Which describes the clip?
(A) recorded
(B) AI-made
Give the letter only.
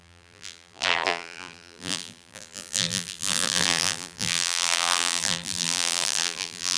B